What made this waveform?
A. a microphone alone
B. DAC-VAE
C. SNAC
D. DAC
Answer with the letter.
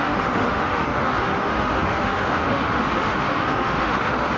B